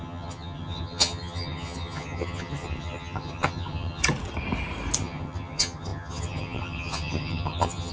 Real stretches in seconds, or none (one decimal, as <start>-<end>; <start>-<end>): 4.0-5.0